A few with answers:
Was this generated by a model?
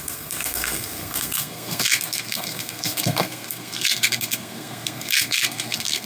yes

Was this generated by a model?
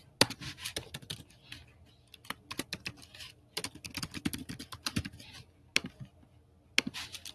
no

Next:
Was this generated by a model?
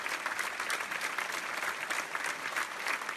no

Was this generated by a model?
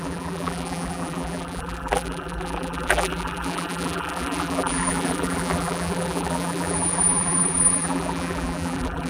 yes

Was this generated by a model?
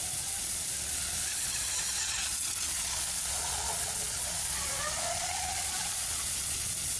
yes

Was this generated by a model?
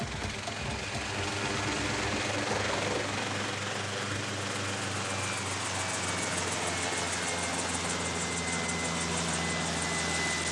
no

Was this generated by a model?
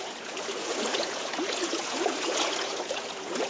yes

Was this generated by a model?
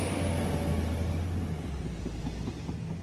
no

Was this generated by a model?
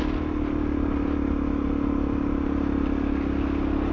no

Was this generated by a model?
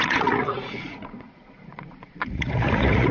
yes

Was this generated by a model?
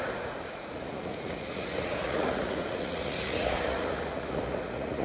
yes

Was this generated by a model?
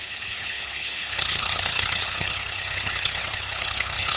yes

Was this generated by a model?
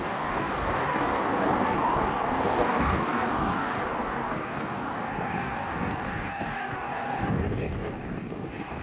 yes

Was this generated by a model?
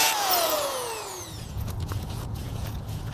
yes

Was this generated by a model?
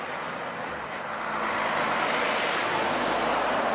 no